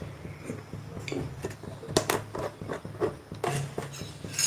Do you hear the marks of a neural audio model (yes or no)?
no